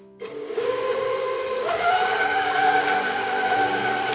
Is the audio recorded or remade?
remade